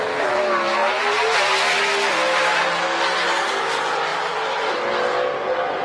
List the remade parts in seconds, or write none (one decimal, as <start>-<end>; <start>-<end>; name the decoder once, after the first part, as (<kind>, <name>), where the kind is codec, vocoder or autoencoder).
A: 0.8-1.4 (vocoder, BigVGAN v2); 4.1-4.9